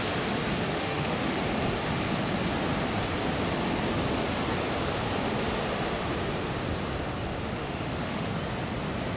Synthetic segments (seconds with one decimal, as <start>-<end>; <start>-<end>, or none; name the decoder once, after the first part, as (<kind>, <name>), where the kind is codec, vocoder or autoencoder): 0.7-1.4 (autoencoder, DAC-VAE); 7.6-8.3

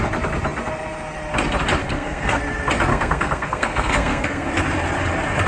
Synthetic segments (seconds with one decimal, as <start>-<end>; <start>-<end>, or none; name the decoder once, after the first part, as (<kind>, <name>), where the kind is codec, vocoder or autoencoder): 1.8-2.4 (codec, SNAC); 2.9-4.5